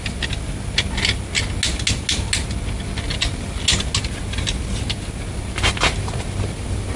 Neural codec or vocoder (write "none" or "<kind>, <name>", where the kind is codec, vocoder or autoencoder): none